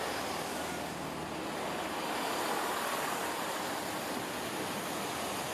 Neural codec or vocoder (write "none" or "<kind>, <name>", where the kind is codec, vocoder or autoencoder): none